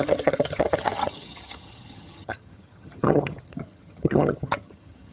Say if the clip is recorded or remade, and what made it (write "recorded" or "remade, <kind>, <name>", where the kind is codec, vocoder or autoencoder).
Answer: remade, vocoder, HiFi-GAN